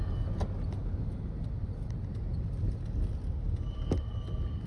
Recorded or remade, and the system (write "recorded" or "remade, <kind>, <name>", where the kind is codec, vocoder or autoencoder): recorded